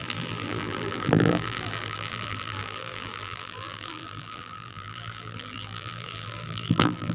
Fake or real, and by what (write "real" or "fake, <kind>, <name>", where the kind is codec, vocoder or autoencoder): fake, vocoder, BigVGAN v2